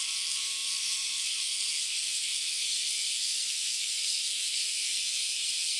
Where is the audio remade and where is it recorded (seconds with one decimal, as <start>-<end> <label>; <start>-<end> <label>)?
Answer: 0.0-5.8 remade